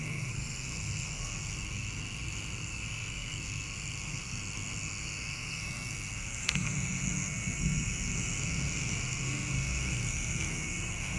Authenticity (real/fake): fake